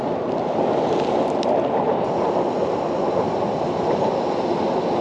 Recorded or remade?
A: recorded